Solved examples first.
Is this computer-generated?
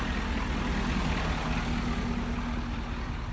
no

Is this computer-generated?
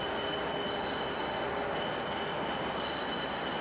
no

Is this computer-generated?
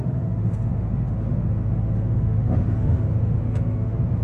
yes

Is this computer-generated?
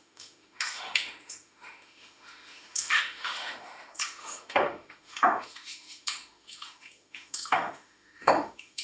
yes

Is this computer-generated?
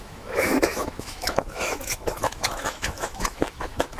yes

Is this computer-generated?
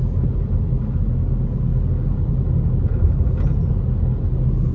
no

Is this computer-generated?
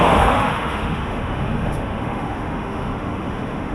yes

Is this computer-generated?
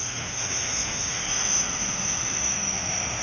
yes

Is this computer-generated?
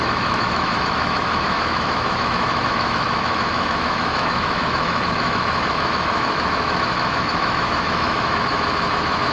yes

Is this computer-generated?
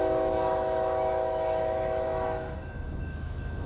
yes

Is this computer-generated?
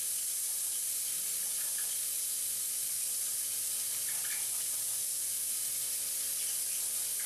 no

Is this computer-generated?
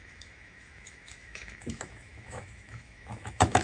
yes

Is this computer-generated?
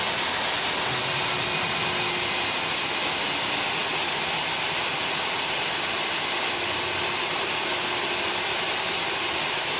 no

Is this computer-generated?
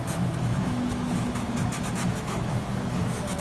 yes